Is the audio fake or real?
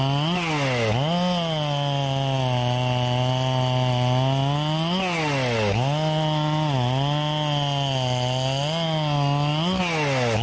real